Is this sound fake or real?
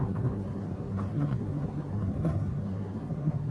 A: fake